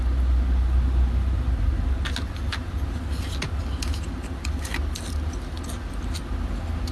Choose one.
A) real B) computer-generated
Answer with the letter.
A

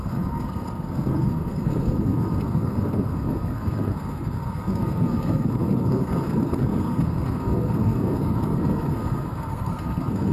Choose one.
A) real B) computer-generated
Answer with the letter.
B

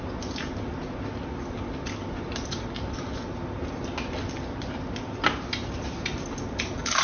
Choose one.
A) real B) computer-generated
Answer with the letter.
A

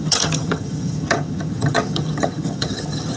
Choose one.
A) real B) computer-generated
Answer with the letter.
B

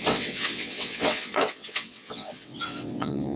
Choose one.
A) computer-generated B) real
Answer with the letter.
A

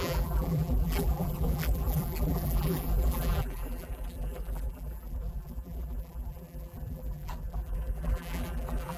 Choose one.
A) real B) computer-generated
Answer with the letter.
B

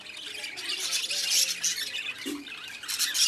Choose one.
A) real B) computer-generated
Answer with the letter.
A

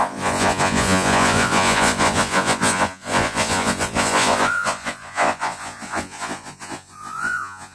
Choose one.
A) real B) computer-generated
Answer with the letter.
B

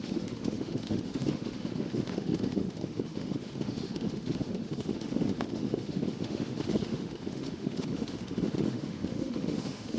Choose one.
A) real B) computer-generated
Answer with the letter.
B